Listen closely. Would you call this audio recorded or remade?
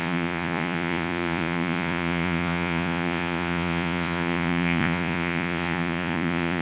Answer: remade